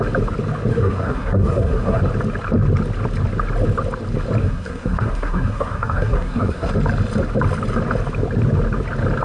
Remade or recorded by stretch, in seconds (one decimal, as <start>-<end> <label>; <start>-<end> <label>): 0.0-0.7 recorded; 0.7-2.0 remade; 2.0-4.4 recorded; 4.4-6.7 remade; 6.7-9.2 recorded